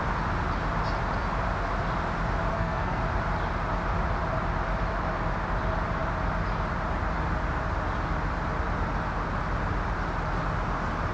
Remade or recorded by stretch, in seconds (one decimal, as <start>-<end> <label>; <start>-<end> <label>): 0.0-2.5 recorded; 2.5-3.0 remade; 3.0-11.1 recorded